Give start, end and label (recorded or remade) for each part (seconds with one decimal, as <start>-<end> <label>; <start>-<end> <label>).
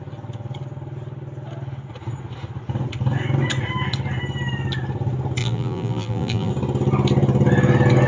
0.0-5.4 recorded; 5.4-6.5 remade; 6.5-8.1 recorded